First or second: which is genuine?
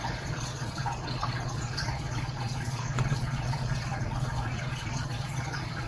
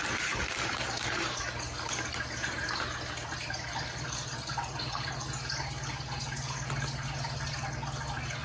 second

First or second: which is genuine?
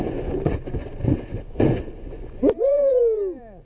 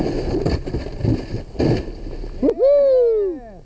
second